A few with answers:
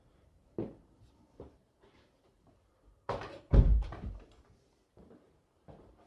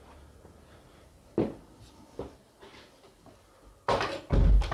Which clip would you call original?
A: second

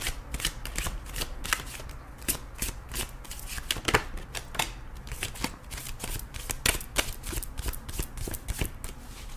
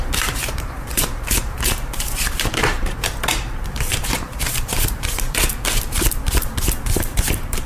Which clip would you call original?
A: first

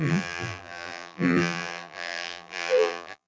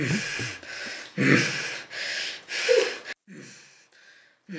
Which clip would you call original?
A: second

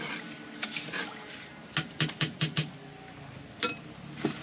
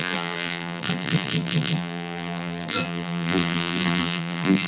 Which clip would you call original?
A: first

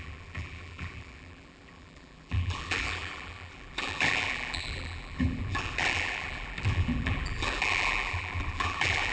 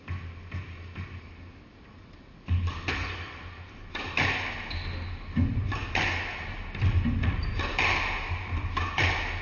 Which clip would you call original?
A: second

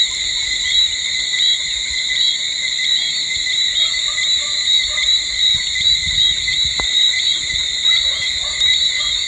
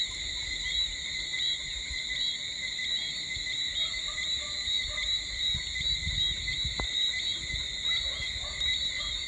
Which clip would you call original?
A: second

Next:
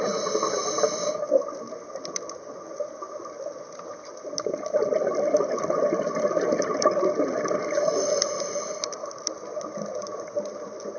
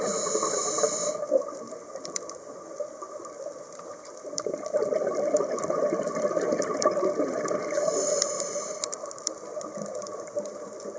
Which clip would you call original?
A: first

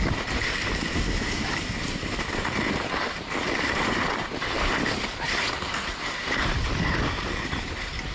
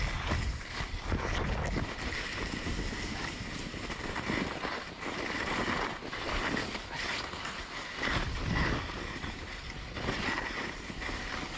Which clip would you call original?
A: second